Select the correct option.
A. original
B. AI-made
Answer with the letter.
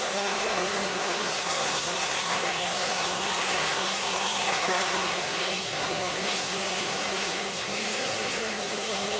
B